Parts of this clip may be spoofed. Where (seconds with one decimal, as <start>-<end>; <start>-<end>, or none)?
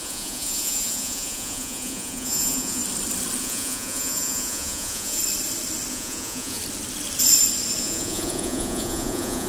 0.0-2.8; 3.4-5.2; 5.9-6.6; 7.8-9.5